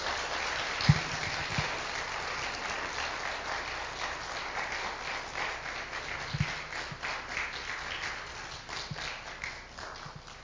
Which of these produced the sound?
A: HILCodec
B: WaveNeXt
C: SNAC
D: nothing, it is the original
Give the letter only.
D